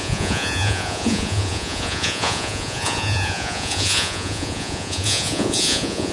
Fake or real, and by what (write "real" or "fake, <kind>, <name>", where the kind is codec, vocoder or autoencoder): fake, vocoder, Vocos